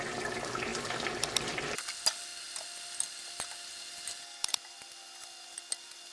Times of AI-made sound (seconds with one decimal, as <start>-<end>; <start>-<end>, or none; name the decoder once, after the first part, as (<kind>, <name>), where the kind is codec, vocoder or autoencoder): none